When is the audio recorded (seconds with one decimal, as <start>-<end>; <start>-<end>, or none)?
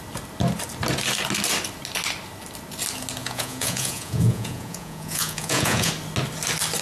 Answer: 0.0-3.2; 5.9-6.8